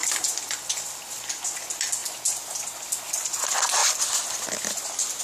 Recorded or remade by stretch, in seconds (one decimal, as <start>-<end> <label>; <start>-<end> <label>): 0.0-2.0 remade; 2.0-3.4 recorded; 3.4-3.8 remade; 3.8-5.2 recorded